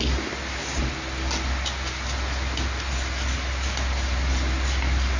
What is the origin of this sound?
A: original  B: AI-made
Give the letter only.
A